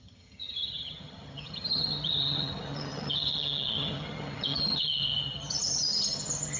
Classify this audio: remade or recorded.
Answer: remade